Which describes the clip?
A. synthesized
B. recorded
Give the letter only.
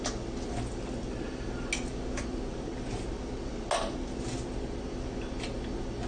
B